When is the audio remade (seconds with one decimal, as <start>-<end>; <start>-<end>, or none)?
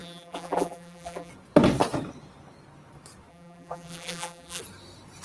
0.0-1.3; 3.3-4.6